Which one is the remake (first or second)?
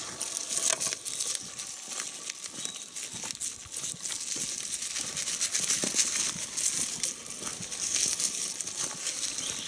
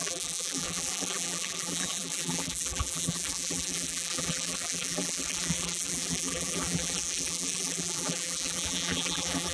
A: second